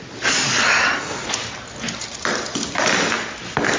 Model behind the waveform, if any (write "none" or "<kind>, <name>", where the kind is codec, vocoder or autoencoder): none